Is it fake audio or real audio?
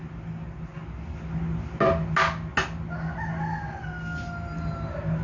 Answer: real